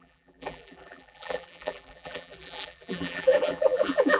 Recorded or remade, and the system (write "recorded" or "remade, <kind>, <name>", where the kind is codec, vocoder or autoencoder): remade, vocoder, BigVGAN v2